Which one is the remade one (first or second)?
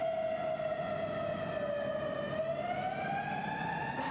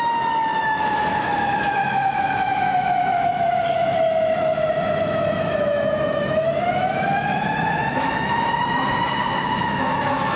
second